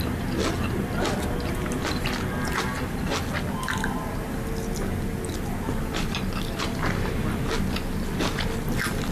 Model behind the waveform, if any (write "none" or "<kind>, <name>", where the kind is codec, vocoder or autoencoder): none